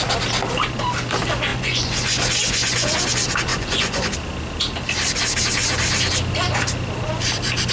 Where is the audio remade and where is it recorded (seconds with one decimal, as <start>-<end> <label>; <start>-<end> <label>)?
0.0-1.5 recorded; 1.5-3.0 remade; 3.0-3.5 recorded; 3.5-4.1 remade; 4.1-7.7 recorded